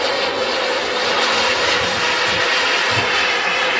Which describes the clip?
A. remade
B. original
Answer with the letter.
B